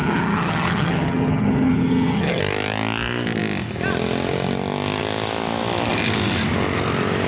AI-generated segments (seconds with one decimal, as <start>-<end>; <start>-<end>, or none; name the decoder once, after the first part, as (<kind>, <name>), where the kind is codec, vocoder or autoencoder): 0.0-2.4 (vocoder, HiFi-GAN)